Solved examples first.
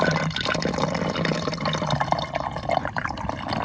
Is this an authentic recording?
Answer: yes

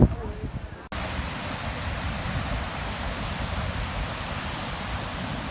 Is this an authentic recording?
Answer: yes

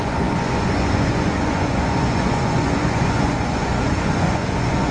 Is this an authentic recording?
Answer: no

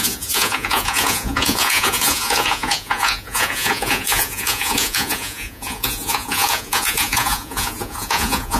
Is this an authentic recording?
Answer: no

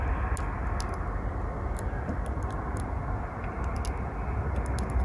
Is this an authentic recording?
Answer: yes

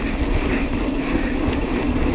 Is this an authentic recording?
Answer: yes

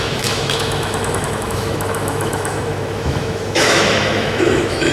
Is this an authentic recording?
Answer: no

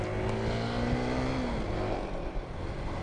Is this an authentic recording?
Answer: yes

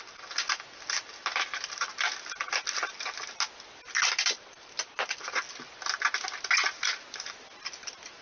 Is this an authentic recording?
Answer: yes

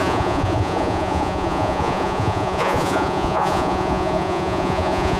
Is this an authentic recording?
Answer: no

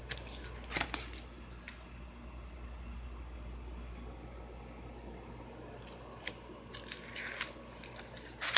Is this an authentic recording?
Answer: yes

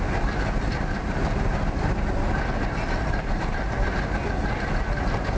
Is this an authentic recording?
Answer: yes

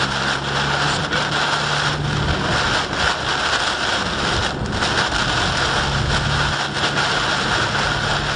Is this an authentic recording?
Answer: yes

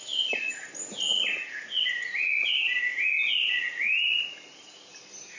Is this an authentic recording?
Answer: yes